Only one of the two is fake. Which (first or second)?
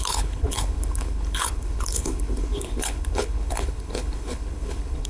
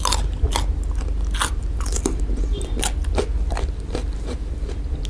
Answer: first